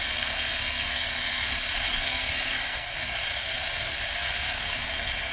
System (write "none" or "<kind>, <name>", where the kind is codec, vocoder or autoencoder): codec, SNAC